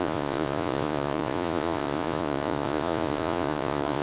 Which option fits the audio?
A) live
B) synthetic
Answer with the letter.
B